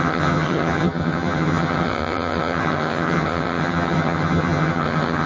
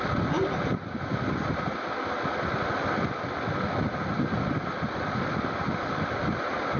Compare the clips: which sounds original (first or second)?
second